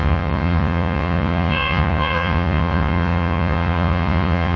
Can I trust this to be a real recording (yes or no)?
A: no